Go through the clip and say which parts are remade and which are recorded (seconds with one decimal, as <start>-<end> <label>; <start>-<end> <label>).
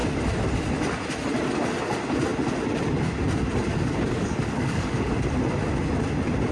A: 0.0-3.7 recorded; 3.7-5.1 remade; 5.1-6.5 recorded